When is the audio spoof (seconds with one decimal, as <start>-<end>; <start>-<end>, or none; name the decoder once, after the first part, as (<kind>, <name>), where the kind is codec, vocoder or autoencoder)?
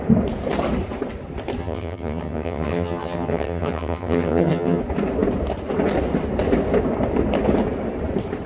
1.6-4.8 (vocoder, HiFi-GAN)